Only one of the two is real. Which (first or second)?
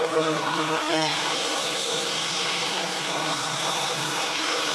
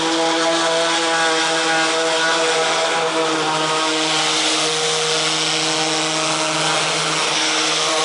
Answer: second